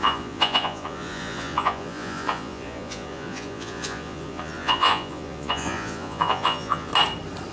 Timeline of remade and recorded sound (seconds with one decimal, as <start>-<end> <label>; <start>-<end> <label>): 0.0-6.9 remade; 6.9-7.5 recorded